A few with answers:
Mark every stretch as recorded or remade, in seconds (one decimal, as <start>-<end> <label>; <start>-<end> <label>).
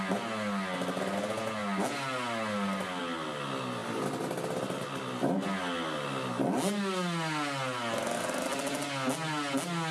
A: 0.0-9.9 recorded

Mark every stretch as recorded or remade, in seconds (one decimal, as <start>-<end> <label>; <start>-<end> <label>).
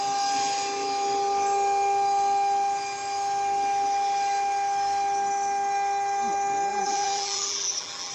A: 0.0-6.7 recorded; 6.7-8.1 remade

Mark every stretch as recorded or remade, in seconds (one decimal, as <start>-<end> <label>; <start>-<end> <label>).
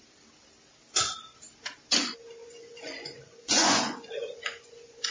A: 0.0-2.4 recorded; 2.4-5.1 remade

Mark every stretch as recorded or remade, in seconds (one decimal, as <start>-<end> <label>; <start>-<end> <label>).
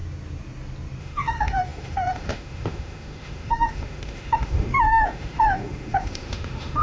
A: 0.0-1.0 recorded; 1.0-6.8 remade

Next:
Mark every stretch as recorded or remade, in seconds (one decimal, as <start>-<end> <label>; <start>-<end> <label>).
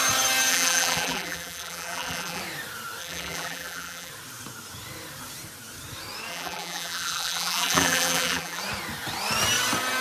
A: 0.0-0.5 recorded; 0.5-2.4 remade; 2.4-3.0 recorded; 3.0-4.1 remade; 4.1-6.3 recorded; 6.3-8.6 remade; 8.6-10.0 recorded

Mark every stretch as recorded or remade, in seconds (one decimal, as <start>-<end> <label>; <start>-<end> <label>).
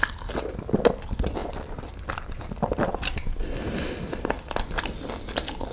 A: 0.0-5.7 recorded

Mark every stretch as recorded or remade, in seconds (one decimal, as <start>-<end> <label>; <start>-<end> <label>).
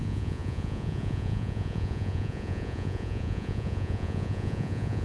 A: 0.0-5.0 remade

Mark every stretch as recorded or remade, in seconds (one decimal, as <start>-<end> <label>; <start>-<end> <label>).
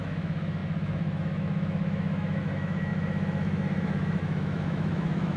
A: 0.0-5.4 remade